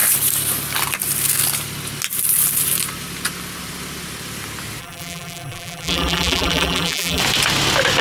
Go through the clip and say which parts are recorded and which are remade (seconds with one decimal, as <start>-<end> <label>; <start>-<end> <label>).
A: 0.0-4.8 recorded; 4.8-7.2 remade; 7.2-8.0 recorded